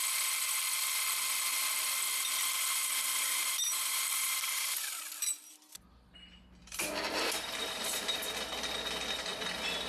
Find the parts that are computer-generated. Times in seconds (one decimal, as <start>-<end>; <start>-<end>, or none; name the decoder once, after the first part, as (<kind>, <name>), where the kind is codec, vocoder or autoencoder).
2.7-5.1 (vocoder, BigVGAN v2); 6.6-8.2